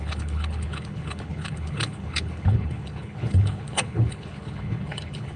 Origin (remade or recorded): remade